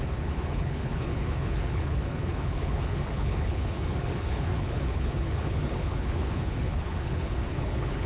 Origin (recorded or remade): remade